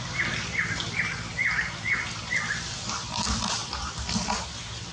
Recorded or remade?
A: recorded